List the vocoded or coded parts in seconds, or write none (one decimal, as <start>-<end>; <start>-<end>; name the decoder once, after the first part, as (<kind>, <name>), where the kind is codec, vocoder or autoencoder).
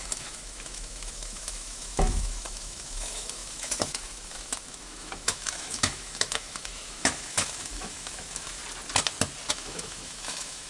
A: 0.0-8.6 (autoencoder, DAC-VAE); 9.5-10.7